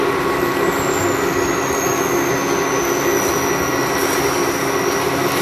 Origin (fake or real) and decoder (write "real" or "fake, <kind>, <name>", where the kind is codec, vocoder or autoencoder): real